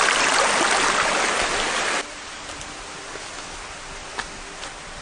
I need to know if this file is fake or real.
real